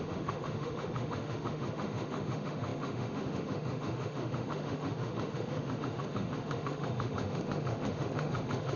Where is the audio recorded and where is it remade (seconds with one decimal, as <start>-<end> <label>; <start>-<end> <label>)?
0.0-8.8 remade